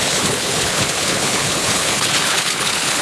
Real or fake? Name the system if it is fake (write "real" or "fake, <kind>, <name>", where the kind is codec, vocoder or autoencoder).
fake, codec, HILCodec